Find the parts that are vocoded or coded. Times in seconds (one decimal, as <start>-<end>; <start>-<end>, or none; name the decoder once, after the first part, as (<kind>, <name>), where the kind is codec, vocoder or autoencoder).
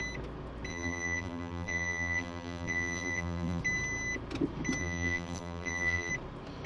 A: 0.7-3.6 (vocoder, BigVGAN v2); 4.8-6.1